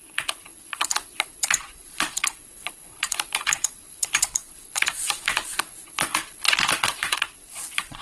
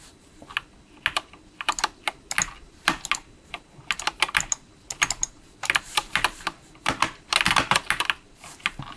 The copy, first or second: first